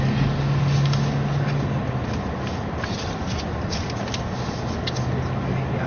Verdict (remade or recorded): recorded